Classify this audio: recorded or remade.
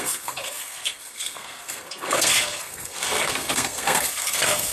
remade